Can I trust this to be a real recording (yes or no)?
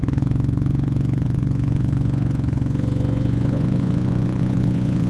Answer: no